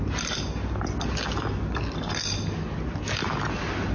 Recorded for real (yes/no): yes